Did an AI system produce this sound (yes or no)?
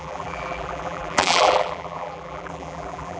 yes